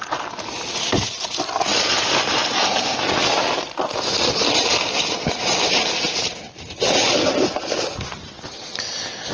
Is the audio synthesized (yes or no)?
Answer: no